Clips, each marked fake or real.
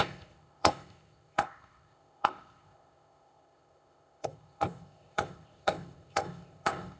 fake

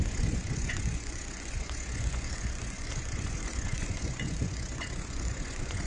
fake